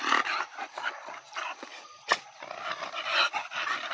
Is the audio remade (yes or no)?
no